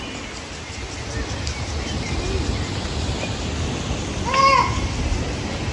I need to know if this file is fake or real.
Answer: real